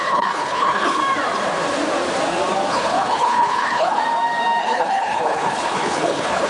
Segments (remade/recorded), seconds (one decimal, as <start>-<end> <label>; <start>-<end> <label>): 0.0-1.0 remade; 1.0-2.7 recorded; 2.7-4.0 remade; 4.0-4.6 recorded; 4.6-6.5 remade